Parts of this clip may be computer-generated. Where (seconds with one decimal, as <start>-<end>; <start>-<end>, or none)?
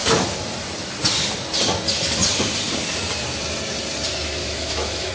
4.4-5.1